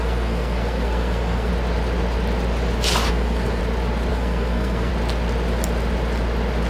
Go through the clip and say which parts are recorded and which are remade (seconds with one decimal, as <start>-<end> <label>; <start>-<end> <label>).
0.0-1.5 remade; 1.5-3.1 recorded; 3.1-3.6 remade; 3.6-4.1 recorded; 4.1-4.9 remade; 4.9-6.7 recorded